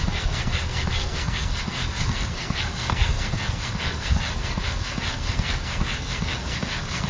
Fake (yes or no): yes